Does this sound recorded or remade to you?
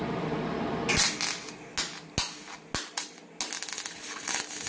recorded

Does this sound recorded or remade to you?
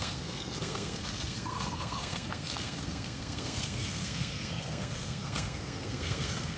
remade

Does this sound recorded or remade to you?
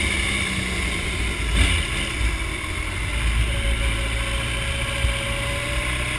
recorded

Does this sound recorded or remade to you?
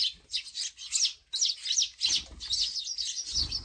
recorded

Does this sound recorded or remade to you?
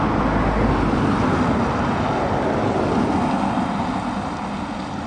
recorded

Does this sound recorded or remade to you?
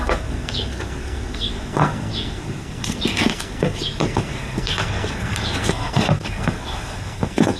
remade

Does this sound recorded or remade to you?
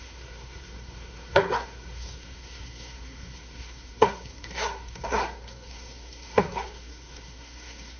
remade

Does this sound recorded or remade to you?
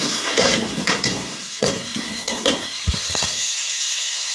remade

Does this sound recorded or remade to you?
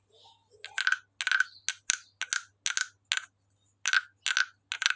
recorded